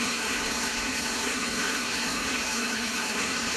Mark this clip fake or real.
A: fake